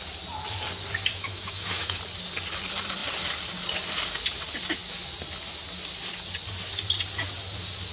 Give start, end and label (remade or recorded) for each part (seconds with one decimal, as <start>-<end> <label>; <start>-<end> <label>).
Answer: 0.0-1.1 recorded; 1.1-2.0 remade; 2.0-7.9 recorded